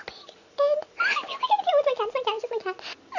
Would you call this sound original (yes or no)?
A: yes